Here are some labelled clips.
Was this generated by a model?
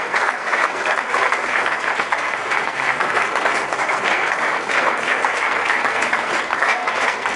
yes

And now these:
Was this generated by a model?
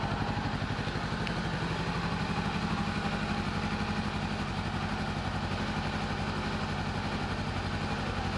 no